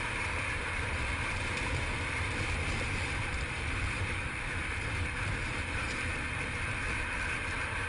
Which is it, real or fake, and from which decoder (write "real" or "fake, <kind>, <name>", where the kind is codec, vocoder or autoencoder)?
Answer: fake, vocoder, BigVGAN v2